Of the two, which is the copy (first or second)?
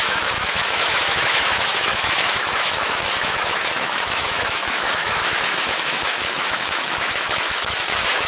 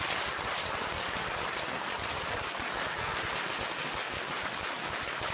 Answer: first